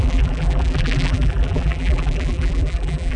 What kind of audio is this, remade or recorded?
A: remade